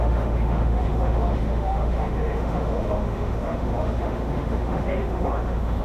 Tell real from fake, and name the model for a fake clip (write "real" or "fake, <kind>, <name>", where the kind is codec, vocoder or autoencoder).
fake, autoencoder, DAC-VAE